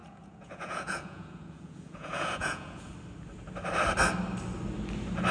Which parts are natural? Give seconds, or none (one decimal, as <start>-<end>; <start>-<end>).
2.9-5.3